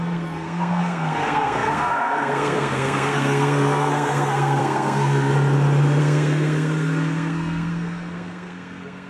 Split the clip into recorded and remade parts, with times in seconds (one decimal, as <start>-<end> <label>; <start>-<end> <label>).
0.0-5.3 remade; 5.3-6.0 recorded; 6.0-9.1 remade